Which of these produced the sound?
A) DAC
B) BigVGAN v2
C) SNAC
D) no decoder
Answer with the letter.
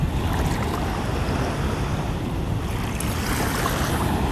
D